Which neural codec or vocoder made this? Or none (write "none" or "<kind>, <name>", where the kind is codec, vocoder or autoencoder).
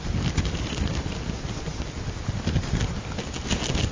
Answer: none